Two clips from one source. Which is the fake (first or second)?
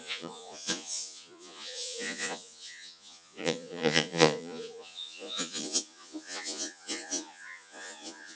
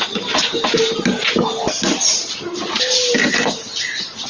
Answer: first